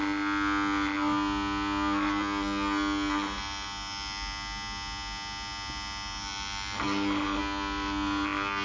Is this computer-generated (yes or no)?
no